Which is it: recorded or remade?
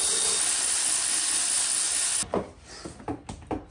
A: recorded